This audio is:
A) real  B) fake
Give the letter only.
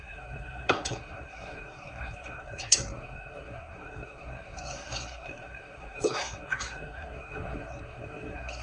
B